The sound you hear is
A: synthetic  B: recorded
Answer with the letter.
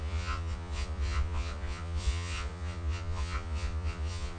A